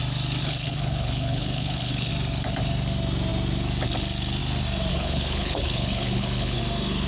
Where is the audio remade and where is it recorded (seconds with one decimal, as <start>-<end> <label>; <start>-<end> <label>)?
0.0-0.4 recorded; 0.4-2.1 remade; 2.1-4.9 recorded; 4.9-6.6 remade; 6.6-7.1 recorded